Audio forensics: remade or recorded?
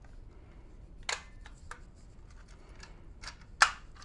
recorded